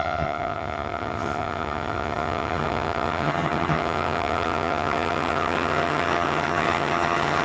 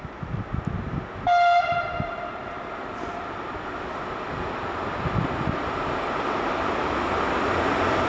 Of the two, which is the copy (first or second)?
first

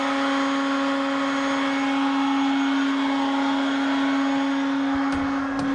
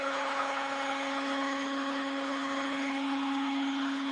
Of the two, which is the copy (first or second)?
second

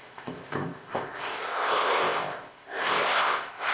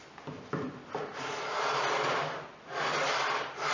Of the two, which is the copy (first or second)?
first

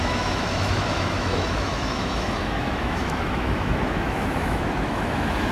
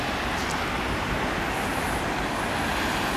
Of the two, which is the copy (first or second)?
first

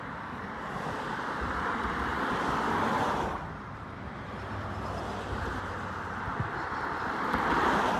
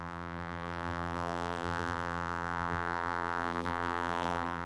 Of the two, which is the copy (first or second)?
second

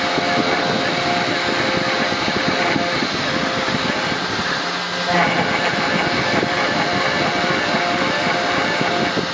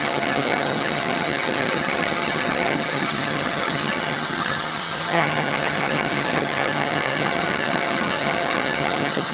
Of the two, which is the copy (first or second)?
second